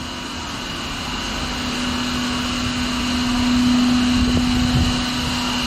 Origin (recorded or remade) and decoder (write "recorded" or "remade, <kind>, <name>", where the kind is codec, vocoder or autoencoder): recorded